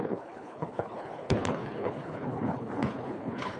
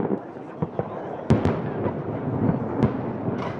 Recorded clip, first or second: second